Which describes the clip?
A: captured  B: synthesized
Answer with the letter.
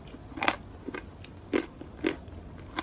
A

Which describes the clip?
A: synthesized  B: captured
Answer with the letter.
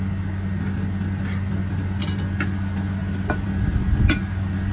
B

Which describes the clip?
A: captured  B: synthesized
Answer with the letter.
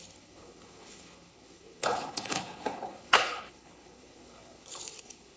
B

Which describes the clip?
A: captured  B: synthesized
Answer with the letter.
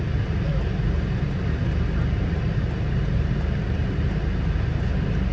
A